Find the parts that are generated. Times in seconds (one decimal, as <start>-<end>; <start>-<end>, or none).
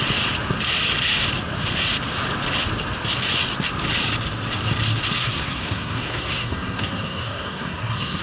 5.2-8.2